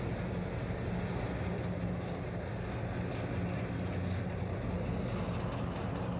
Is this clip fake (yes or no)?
no